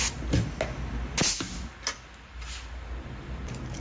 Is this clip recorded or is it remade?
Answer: recorded